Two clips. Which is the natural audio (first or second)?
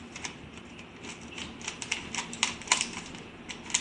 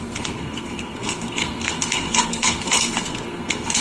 first